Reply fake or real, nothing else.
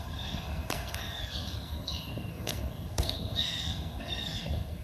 fake